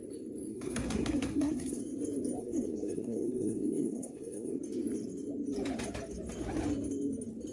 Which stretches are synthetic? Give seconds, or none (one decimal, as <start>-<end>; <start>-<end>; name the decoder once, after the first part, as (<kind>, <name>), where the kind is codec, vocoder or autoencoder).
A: 0.5-1.8 (codec, SNAC); 2.4-4.6